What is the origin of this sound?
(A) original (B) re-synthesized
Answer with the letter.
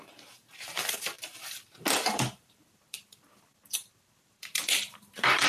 B